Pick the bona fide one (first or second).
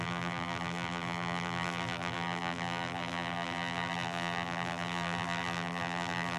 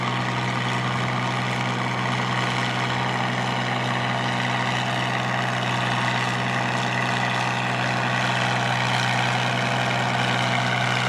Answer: second